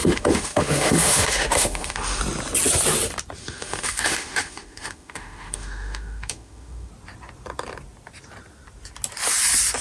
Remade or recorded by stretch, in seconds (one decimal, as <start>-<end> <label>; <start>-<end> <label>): 0.0-2.2 remade; 2.2-3.4 recorded; 3.4-6.9 remade; 6.9-9.8 recorded